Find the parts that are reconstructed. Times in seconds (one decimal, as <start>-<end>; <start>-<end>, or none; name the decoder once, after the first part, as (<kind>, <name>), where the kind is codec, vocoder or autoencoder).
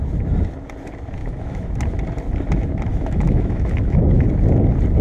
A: 1.2-1.7 (autoencoder, DAC-VAE); 2.9-4.3